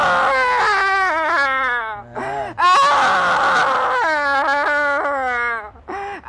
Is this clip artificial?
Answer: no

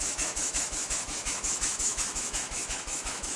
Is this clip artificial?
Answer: yes